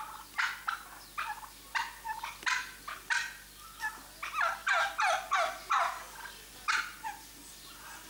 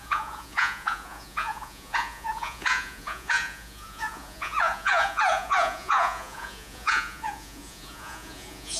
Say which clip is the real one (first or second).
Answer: first